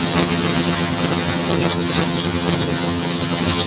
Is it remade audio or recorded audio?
remade